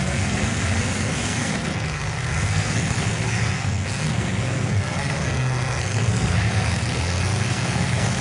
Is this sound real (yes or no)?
no